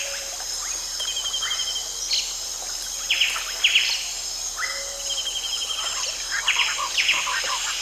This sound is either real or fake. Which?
real